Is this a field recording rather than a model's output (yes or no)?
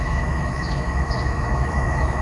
no